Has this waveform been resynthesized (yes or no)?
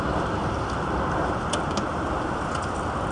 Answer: no